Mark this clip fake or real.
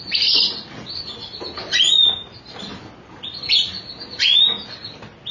real